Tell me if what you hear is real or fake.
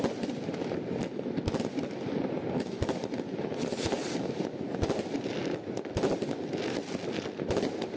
real